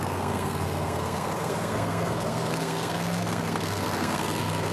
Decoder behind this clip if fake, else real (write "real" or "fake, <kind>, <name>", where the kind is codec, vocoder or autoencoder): fake, codec, SNAC